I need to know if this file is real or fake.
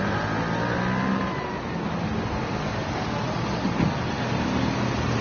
real